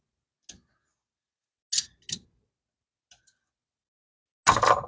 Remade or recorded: recorded